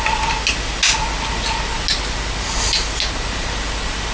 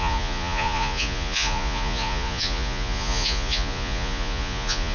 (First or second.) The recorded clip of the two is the first